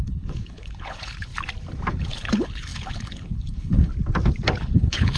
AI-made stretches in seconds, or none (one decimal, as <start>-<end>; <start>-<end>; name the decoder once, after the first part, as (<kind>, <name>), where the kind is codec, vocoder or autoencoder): 0.0-1.3 (codec, HILCodec); 1.9-3.9; 4.6-5.2